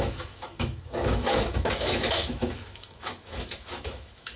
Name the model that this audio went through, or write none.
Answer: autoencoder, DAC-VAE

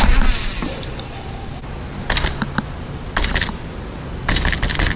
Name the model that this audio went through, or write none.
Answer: none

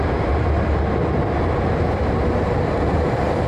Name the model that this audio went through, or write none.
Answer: none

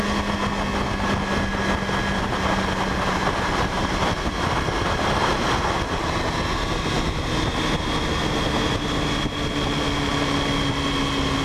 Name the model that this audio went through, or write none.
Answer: none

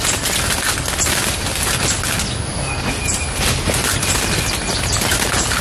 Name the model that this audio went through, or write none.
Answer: none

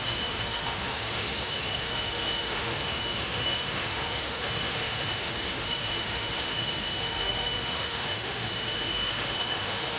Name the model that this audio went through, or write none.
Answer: autoencoder, DAC-VAE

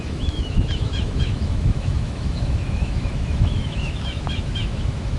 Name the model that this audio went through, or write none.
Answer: autoencoder, DAC-VAE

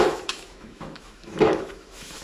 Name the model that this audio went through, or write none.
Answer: autoencoder, DAC-VAE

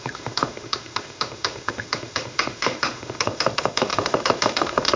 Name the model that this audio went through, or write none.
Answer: autoencoder, DAC-VAE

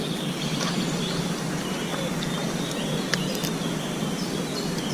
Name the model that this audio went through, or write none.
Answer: none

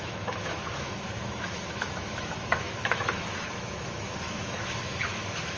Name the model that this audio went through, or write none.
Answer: autoencoder, DAC-VAE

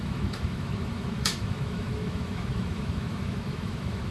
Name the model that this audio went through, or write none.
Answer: autoencoder, DAC-VAE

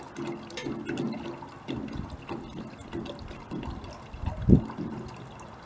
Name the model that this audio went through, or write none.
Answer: none